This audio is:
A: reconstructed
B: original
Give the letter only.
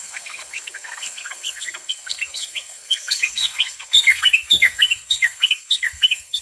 A